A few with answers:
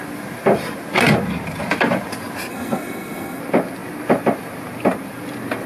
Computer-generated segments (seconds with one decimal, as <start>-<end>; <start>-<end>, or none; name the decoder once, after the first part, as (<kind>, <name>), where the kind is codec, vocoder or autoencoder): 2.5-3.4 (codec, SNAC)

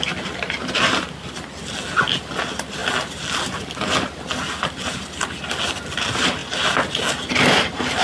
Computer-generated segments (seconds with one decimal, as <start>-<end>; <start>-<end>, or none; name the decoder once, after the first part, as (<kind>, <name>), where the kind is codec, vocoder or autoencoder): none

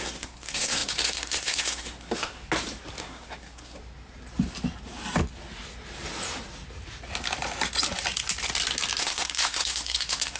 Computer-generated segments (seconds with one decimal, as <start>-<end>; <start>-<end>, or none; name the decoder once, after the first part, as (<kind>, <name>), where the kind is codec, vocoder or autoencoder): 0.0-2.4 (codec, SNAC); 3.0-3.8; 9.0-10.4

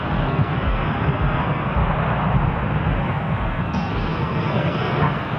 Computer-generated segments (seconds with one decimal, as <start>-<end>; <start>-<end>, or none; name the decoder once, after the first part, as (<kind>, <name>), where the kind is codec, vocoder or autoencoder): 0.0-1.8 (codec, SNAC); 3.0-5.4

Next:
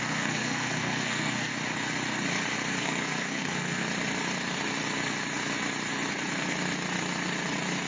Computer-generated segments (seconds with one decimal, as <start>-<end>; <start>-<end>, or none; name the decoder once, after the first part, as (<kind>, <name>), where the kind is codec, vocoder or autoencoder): 0.0-1.5 (codec, SNAC); 2.8-3.8

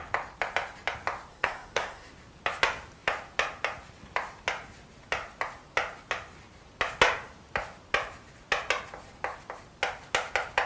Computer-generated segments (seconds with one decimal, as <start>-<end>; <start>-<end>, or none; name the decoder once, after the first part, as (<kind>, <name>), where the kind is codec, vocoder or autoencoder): 1.3-2.1 (codec, SNAC)